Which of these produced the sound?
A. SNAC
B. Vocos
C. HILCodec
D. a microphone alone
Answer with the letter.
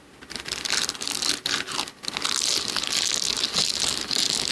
D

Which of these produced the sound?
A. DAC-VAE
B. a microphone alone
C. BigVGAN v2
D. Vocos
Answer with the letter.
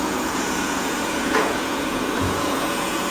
D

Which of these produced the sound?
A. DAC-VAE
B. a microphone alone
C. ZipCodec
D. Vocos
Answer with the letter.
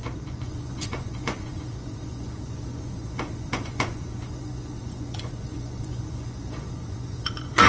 D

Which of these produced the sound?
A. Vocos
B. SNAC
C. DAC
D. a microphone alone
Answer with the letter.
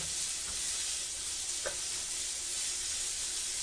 D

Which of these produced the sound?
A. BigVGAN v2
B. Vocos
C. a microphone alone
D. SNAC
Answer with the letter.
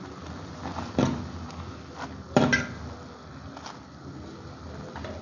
C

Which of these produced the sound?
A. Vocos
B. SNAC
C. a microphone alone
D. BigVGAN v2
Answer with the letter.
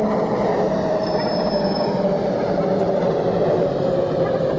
C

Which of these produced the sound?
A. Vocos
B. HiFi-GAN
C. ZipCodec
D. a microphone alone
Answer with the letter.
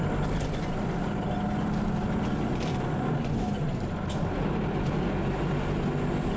D